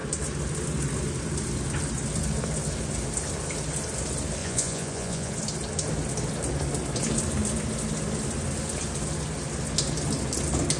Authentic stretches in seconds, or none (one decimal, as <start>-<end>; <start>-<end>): 0.0-4.4; 5.3-10.8